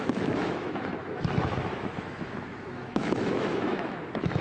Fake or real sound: fake